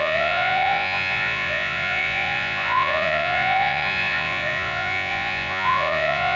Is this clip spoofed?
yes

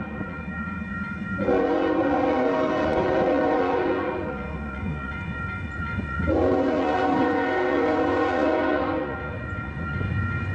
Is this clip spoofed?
yes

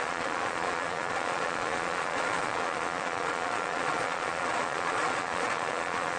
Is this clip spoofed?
yes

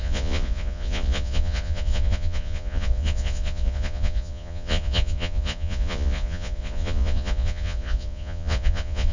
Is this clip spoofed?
yes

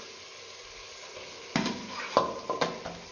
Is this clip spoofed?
no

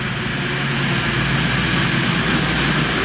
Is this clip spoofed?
no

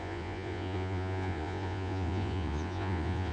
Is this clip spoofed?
yes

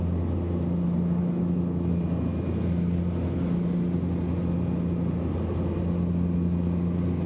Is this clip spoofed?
no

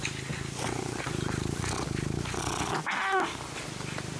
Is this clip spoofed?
no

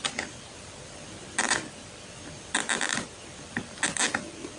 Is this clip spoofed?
no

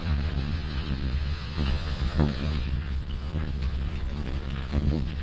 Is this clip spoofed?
yes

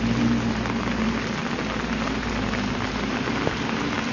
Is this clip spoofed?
no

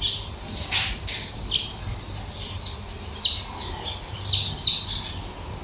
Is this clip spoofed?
no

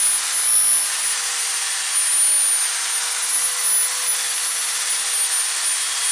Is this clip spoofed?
no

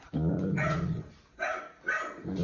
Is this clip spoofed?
no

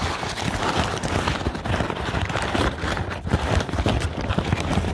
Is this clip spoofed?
no